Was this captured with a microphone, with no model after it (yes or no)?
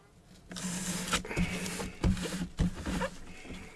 yes